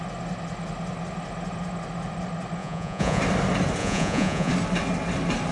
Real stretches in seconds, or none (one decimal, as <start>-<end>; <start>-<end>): 0.0-2.6; 3.2-3.8; 4.5-5.5